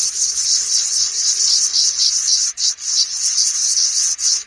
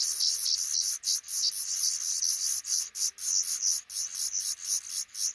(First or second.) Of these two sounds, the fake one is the first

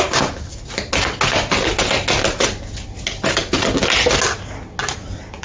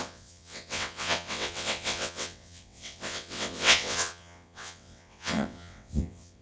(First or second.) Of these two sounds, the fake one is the second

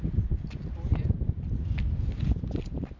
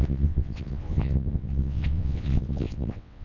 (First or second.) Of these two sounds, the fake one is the second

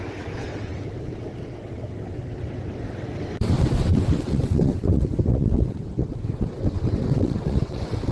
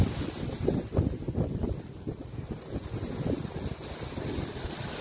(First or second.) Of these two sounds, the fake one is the first